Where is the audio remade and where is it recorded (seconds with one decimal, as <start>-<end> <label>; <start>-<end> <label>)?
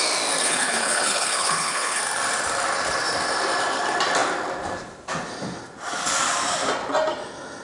0.0-0.4 recorded; 0.4-2.0 remade; 2.0-7.6 recorded